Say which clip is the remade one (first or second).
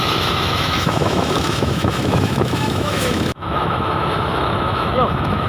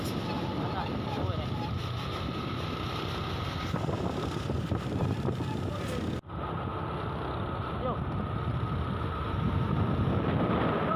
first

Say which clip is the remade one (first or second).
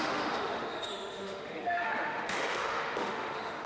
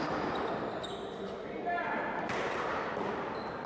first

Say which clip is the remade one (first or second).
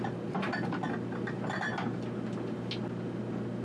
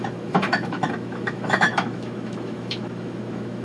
second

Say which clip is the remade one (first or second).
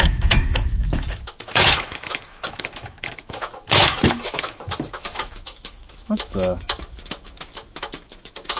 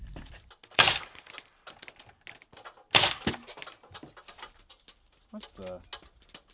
first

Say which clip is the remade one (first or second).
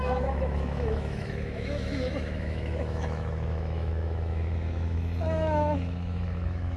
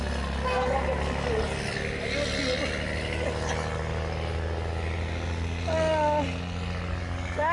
first